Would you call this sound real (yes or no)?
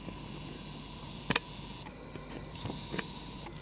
yes